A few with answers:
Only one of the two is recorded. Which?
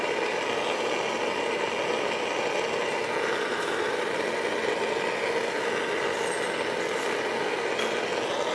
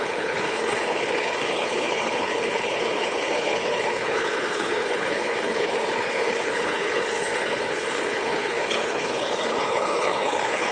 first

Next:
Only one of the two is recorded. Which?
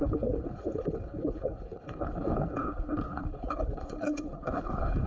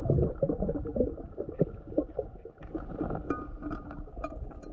second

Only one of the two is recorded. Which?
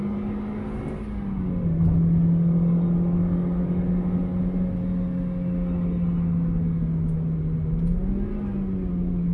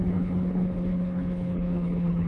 first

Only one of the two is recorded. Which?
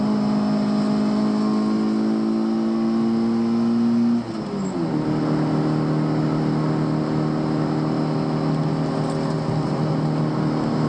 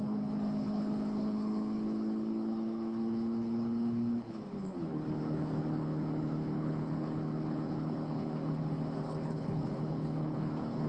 first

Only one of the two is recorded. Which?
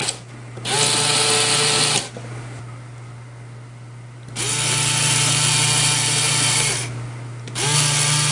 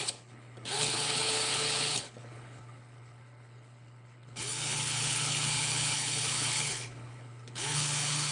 first